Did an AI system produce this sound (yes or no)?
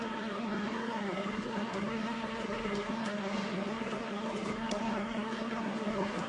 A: yes